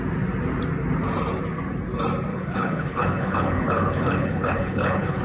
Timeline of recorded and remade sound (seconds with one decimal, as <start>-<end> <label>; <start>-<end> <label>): 0.0-2.3 recorded; 2.3-5.2 remade

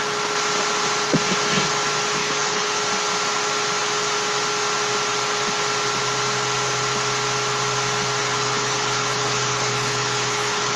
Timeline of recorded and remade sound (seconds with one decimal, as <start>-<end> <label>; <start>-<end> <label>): 0.0-2.2 recorded; 2.2-2.8 remade; 2.8-8.2 recorded; 8.2-10.8 remade

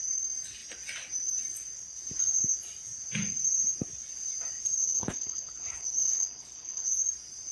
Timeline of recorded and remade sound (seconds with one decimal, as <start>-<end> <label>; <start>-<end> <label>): 0.0-4.8 recorded; 4.8-6.9 remade; 6.9-7.5 recorded

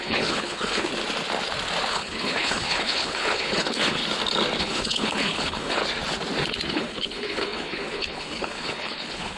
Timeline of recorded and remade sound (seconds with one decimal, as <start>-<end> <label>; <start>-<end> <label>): 0.0-0.9 remade; 0.9-1.9 recorded; 1.9-4.0 remade; 4.0-4.6 recorded; 4.6-5.8 remade; 5.8-6.7 recorded; 6.7-9.4 remade

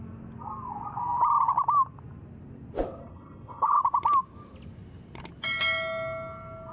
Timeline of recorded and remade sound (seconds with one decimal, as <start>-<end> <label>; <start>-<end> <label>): 0.0-3.0 recorded; 3.0-3.8 remade; 3.8-6.7 recorded

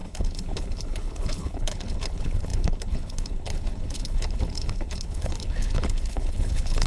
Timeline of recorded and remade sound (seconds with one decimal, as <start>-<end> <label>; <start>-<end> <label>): 0.0-6.9 remade

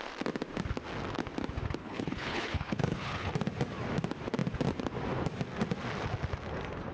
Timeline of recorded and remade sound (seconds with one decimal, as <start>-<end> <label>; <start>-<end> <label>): 0.0-1.8 recorded; 1.8-3.3 remade; 3.3-6.9 recorded